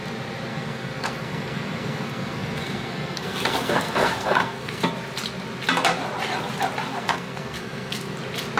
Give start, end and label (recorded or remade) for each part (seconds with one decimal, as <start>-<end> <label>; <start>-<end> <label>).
0.0-0.5 recorded; 0.5-4.9 remade; 4.9-6.9 recorded; 6.9-8.2 remade; 8.2-8.6 recorded